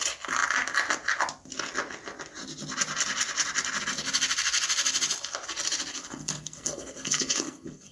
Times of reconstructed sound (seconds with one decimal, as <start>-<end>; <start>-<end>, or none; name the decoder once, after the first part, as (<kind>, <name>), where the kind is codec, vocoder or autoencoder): 5.9-7.9 (codec, SNAC)